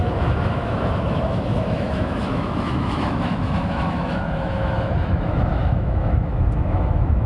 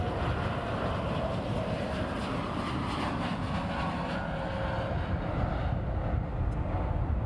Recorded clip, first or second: second